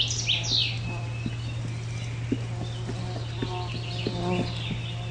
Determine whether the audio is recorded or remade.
recorded